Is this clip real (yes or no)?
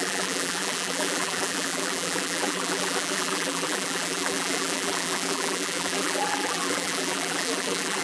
no